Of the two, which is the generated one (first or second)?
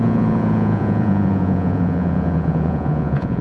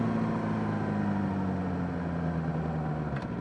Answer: first